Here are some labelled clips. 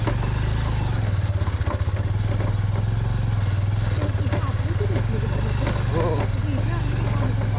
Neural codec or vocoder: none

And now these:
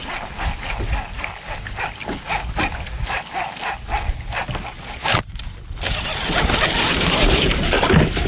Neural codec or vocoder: none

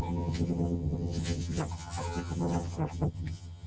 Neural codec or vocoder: vocoder, HiFi-GAN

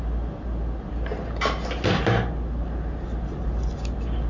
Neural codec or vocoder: none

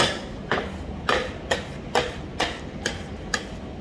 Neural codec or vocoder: none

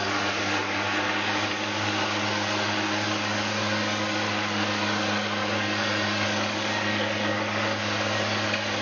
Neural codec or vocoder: codec, DAC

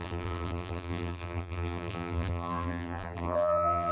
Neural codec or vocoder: vocoder, BigVGAN v2